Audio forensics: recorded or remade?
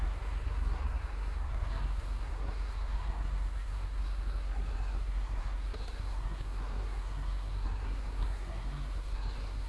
remade